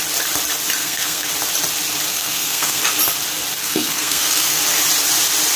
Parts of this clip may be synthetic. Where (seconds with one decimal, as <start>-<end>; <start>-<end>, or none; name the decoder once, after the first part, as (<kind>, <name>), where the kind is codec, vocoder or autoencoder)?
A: 0.8-1.3 (codec, SNAC); 2.1-2.8; 3.6-4.6